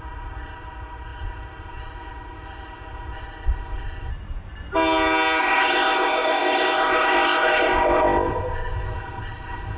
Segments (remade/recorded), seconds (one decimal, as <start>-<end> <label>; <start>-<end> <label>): 0.0-4.1 remade; 4.1-5.4 recorded; 5.4-9.8 remade